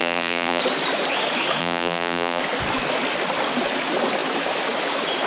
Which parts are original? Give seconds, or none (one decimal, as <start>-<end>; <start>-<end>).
0.6-1.6; 2.4-5.3